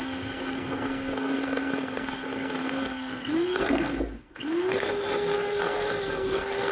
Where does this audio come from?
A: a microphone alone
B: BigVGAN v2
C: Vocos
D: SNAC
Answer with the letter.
D